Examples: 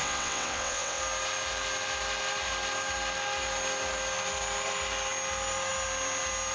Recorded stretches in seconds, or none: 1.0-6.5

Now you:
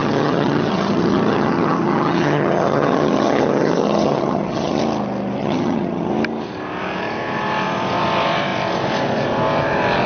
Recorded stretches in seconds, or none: 4.8-5.4; 6.1-10.1